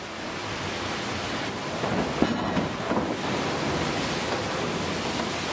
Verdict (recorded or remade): recorded